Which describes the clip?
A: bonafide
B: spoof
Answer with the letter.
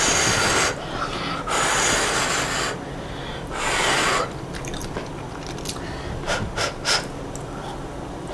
A